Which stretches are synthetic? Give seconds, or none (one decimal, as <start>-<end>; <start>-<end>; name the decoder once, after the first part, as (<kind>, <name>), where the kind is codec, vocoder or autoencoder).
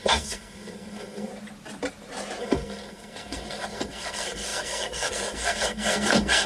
0.0-1.3 (codec, SNAC); 2.4-6.5